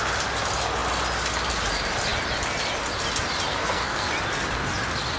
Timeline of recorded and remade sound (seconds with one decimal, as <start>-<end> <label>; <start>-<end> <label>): 0.0-3.5 recorded; 3.5-4.1 remade; 4.1-5.2 recorded

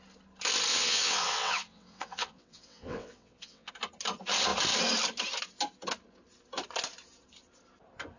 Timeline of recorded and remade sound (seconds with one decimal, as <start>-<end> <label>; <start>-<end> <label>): 0.0-0.7 recorded; 0.7-3.7 remade; 3.7-8.2 recorded